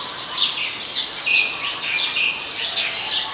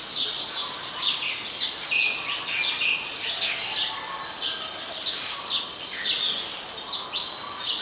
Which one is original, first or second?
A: first